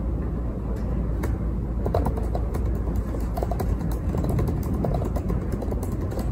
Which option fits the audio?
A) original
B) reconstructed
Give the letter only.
A